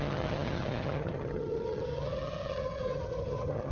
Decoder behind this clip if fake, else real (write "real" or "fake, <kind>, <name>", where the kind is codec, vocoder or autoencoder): fake, vocoder, HiFi-GAN